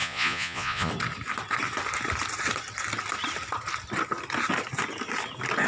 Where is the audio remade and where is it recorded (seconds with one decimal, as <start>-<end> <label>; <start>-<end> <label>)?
0.0-0.9 remade; 0.9-5.7 recorded